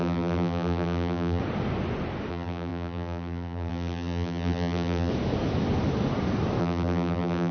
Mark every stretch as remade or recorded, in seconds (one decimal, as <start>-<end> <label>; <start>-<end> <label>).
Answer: 0.0-1.4 remade; 1.4-2.3 recorded; 2.3-5.1 remade; 5.1-6.6 recorded; 6.6-7.5 remade